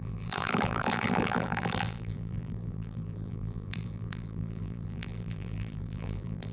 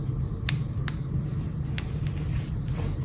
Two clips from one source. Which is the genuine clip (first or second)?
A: second